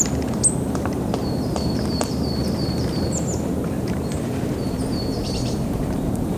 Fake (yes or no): yes